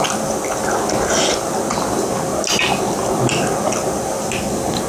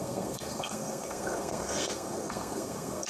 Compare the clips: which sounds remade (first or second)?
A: second